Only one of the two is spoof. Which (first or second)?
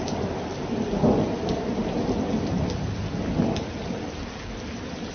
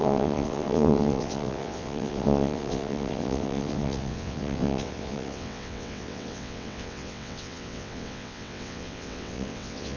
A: second